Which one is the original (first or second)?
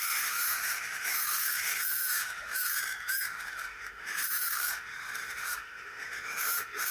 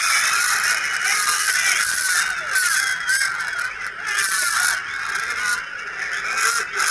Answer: second